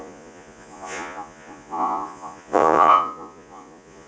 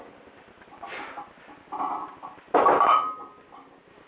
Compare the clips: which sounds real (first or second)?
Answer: second